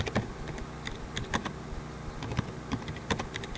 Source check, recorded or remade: remade